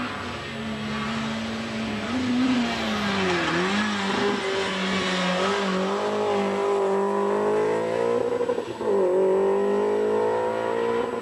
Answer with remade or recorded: recorded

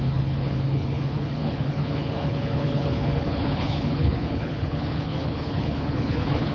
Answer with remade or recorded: remade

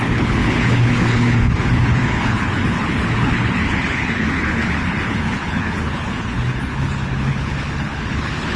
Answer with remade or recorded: remade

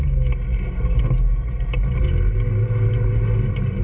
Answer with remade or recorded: recorded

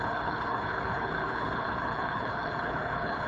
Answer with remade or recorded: remade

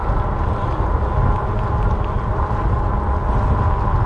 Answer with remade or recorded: recorded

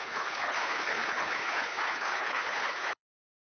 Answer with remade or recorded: remade